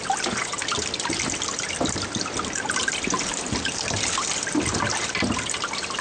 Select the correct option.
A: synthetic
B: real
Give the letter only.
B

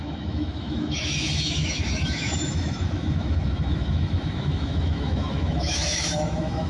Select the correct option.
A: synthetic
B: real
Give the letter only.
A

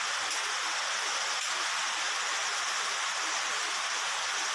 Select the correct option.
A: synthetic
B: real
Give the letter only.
B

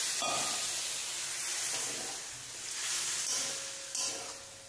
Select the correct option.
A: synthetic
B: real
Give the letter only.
B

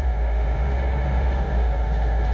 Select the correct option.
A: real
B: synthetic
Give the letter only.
B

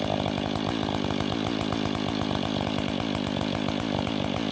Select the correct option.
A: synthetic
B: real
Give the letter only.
B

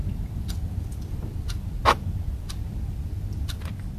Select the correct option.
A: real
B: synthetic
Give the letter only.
A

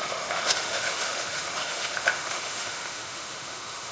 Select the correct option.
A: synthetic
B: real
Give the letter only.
A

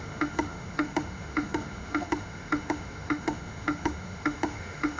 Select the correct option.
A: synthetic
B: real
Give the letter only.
A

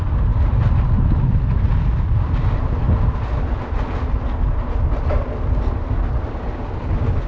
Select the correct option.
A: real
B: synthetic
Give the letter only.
A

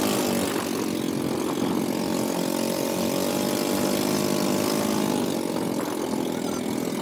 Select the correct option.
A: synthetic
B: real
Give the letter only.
B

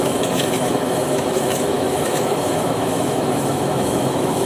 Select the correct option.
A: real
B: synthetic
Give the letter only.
B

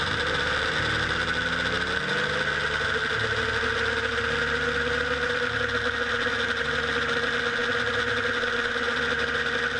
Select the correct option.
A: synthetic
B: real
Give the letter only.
B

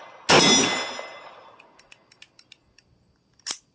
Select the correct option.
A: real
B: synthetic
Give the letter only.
A